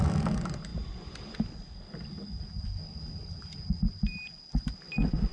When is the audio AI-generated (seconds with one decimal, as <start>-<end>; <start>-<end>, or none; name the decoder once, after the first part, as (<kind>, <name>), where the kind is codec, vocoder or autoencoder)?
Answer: none